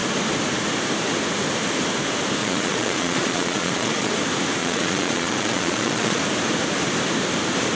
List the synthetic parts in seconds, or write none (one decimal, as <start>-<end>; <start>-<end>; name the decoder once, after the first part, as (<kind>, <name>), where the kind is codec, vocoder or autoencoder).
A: 2.4-4.1 (vocoder, Vocos); 4.6-6.2